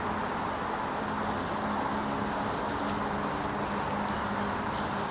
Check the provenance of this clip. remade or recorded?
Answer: recorded